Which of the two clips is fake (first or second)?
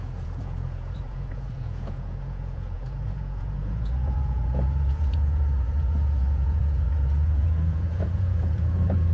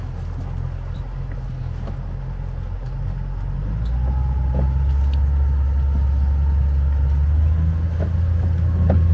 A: first